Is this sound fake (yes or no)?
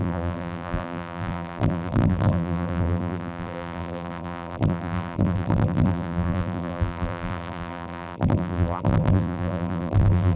yes